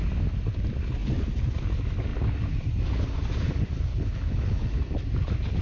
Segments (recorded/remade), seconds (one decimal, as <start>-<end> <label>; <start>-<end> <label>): 0.0-3.9 recorded; 3.9-4.8 remade; 4.8-5.6 recorded